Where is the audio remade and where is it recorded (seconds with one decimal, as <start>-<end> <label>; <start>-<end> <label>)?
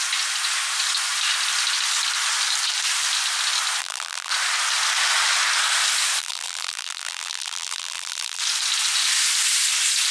0.0-3.8 recorded; 3.8-4.3 remade; 4.3-6.2 recorded; 6.2-8.4 remade; 8.4-10.1 recorded